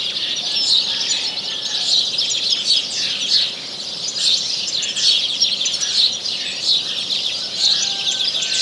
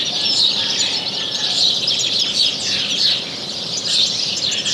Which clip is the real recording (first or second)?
first